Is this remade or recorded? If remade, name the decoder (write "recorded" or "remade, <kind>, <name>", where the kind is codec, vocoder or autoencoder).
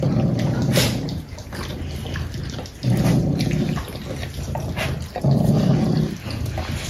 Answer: recorded